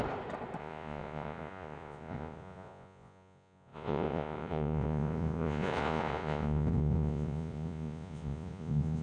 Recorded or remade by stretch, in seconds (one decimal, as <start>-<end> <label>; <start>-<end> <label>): 0.0-0.6 recorded; 0.6-9.0 remade